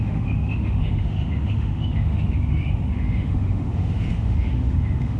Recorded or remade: remade